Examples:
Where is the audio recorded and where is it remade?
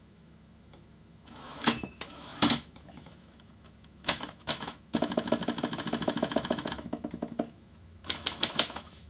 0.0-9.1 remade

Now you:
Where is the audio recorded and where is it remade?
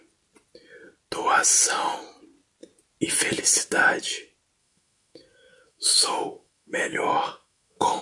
0.0-4.6 recorded; 4.6-8.0 remade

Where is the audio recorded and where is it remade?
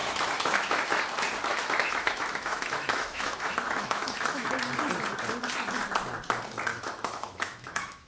0.0-0.9 remade; 0.9-1.5 recorded; 1.5-4.5 remade; 4.5-6.7 recorded; 6.7-8.1 remade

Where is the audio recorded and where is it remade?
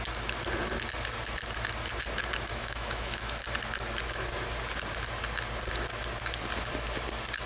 0.0-2.5 recorded; 2.5-3.4 remade; 3.4-7.5 recorded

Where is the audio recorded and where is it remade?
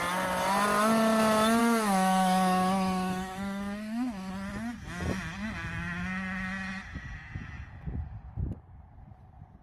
0.0-1.6 recorded; 1.6-4.3 remade; 4.3-9.6 recorded